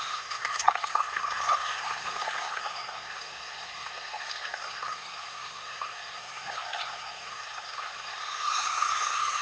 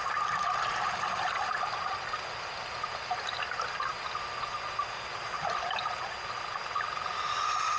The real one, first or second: second